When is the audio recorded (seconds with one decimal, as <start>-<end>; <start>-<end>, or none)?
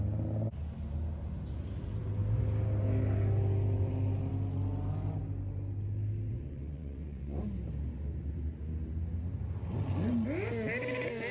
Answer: 0.0-6.3; 7.4-11.3